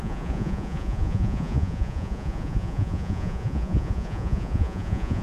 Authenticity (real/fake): fake